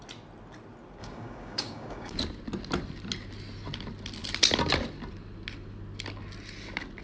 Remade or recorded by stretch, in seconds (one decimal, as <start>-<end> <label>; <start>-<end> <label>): 0.0-1.0 recorded; 1.0-2.2 remade; 2.2-7.0 recorded